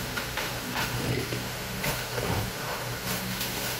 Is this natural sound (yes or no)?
no